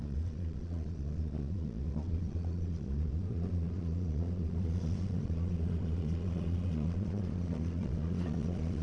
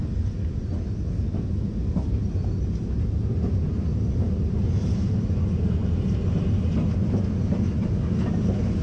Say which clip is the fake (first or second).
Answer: first